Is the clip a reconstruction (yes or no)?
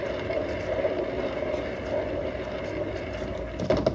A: no